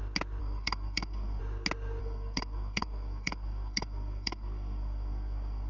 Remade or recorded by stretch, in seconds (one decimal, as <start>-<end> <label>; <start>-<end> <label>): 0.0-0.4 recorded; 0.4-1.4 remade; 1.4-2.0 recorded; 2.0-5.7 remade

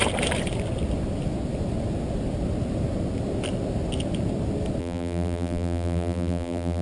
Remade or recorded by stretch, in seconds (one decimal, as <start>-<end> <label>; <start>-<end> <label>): 0.0-4.8 recorded; 4.8-6.8 remade

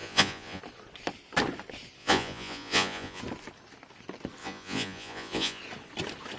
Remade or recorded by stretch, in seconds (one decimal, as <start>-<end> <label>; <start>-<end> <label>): 0.0-0.6 remade; 0.6-2.0 recorded; 2.0-3.2 remade; 3.2-4.4 recorded; 4.4-5.6 remade; 5.6-6.4 recorded